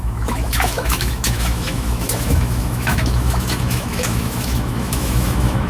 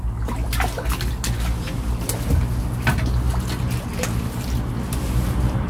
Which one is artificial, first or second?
first